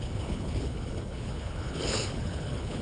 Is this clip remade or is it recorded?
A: remade